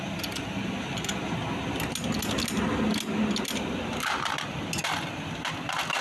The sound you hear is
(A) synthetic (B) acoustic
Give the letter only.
B